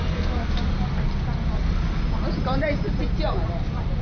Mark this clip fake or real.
real